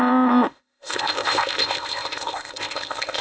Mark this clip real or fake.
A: fake